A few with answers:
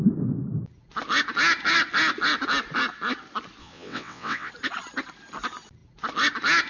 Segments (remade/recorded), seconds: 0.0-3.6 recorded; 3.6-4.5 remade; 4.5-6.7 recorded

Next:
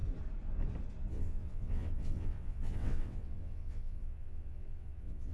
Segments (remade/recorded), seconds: 0.0-1.1 recorded; 1.1-5.3 remade

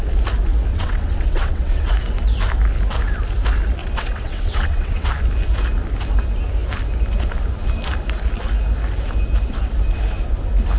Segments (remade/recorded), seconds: 0.0-0.7 recorded; 0.7-1.9 remade; 1.9-3.8 recorded; 3.8-5.1 remade; 5.1-10.8 recorded

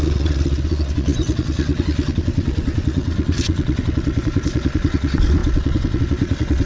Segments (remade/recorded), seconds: 0.0-6.7 remade

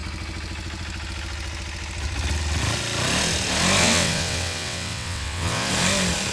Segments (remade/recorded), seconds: 0.0-3.8 recorded; 3.8-5.7 remade; 5.7-6.3 recorded

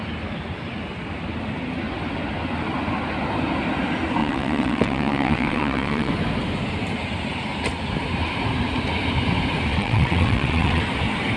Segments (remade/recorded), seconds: 0.0-4.2 recorded; 4.2-6.1 remade; 6.1-9.7 recorded; 9.7-10.8 remade; 10.8-11.4 recorded

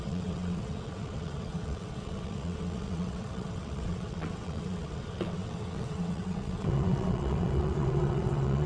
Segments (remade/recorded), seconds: 0.0-8.7 remade

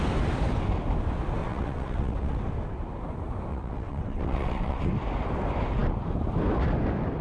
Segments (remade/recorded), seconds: 0.0-1.4 recorded; 1.4-2.4 remade; 2.4-3.5 recorded; 3.5-4.9 remade; 4.9-7.2 recorded